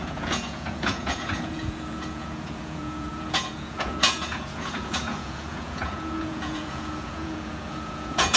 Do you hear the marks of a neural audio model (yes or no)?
yes